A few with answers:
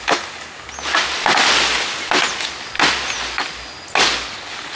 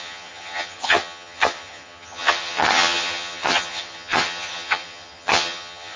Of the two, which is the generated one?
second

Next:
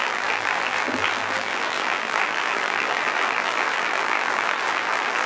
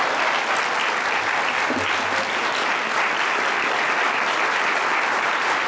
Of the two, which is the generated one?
first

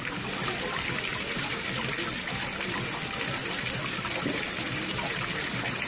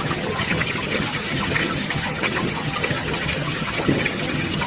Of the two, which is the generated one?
second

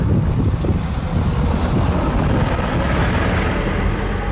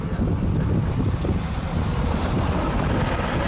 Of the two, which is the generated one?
second